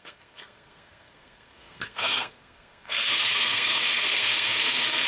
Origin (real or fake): fake